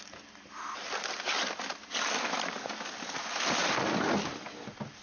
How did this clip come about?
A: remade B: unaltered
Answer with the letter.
B